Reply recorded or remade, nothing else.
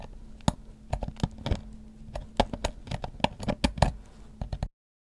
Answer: recorded